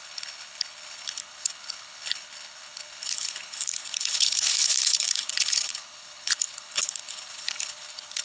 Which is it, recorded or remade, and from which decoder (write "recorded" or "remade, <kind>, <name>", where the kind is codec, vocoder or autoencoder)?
remade, codec, HILCodec